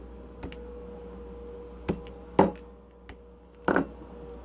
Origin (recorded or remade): recorded